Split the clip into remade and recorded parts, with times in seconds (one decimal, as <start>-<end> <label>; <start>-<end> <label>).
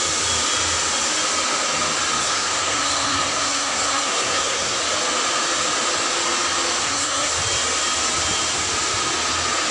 0.0-2.2 recorded; 2.2-4.8 remade; 4.8-6.8 recorded; 6.8-7.3 remade; 7.3-9.7 recorded